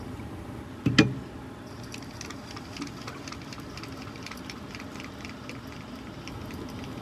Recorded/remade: recorded